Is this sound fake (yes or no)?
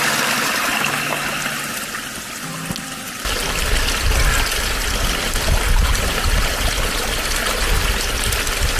no